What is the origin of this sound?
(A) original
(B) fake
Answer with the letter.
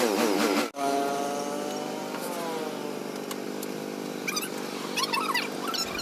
A